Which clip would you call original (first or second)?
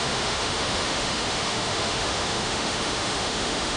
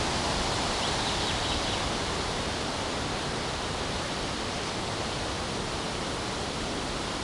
second